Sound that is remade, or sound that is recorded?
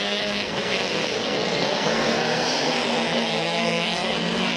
remade